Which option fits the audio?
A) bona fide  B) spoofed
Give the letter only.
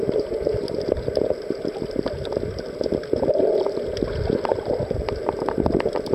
A